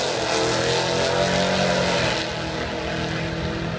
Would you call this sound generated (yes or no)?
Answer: no